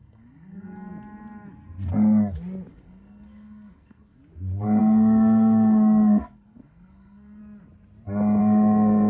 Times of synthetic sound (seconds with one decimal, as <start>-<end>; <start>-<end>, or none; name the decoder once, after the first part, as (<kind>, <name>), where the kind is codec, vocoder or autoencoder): 0.0-0.9 (codec, SNAC); 2.7-4.2; 4.8-7.4; 8.4-9.1